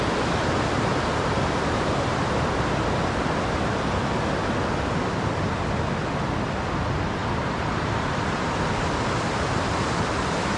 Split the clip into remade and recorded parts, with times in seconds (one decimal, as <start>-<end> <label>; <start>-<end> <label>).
0.0-0.9 recorded; 0.9-1.8 remade; 1.8-7.2 recorded; 7.2-8.8 remade; 8.8-10.6 recorded